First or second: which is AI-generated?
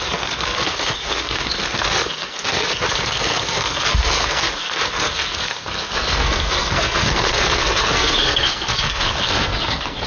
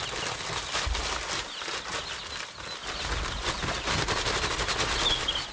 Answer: first